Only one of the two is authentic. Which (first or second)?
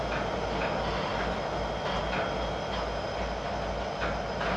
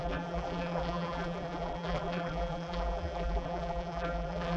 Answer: first